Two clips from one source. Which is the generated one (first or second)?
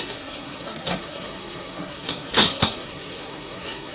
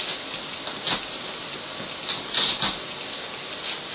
first